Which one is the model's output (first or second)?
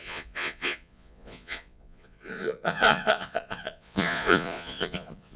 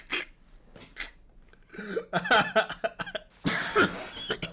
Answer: first